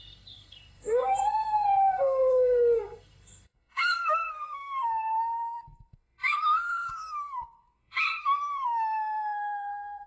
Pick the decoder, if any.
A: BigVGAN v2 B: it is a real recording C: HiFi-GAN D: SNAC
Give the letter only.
D